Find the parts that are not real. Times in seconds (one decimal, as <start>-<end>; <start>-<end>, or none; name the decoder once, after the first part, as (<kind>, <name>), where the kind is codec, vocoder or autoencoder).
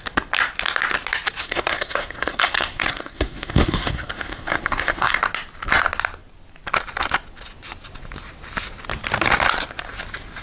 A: 1.4-5.2 (codec, SNAC)